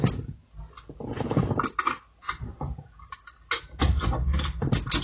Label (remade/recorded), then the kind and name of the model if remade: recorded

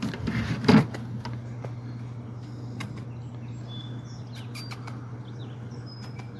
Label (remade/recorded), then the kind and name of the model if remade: recorded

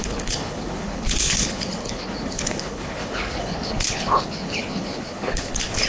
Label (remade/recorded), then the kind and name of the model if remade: remade, codec, HILCodec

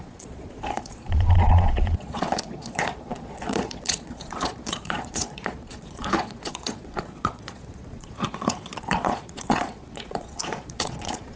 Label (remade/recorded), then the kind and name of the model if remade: remade, vocoder, Vocos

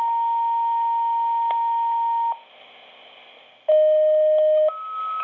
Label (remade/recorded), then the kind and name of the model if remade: recorded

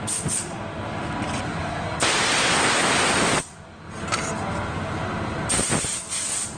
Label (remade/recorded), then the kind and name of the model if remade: recorded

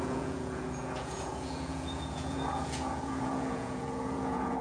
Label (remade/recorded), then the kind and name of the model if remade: remade, vocoder, Vocos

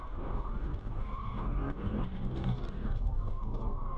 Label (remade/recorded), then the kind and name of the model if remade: remade, codec, DAC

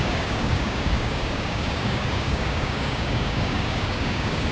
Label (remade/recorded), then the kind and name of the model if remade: remade, codec, DAC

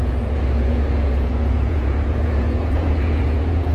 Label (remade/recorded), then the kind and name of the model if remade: remade, vocoder, Vocos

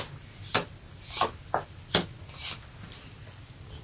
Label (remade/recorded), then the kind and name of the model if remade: recorded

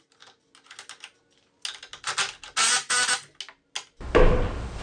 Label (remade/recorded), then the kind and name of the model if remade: recorded